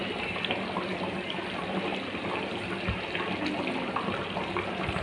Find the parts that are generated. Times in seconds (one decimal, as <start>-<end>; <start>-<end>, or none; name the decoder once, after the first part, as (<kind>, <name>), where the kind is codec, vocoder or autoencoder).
none